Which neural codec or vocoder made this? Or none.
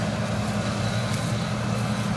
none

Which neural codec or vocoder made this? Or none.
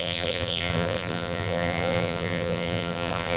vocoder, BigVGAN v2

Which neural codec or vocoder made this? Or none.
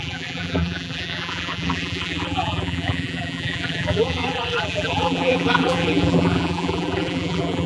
vocoder, BigVGAN v2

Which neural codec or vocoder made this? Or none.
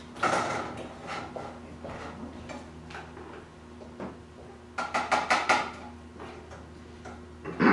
none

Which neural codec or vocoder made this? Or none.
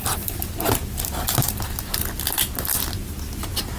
none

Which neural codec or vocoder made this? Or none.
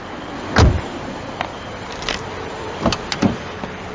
none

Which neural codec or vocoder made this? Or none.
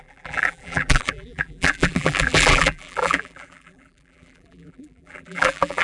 vocoder, BigVGAN v2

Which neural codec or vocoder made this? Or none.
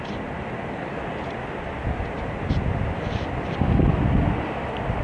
none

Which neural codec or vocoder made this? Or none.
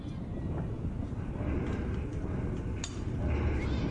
none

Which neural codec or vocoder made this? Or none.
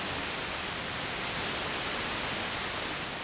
none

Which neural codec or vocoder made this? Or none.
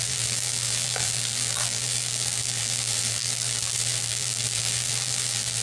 vocoder, BigVGAN v2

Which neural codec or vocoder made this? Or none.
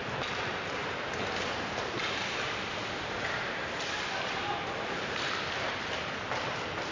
vocoder, BigVGAN v2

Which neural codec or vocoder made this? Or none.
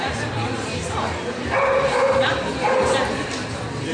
vocoder, BigVGAN v2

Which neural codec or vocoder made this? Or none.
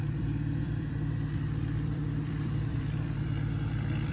vocoder, BigVGAN v2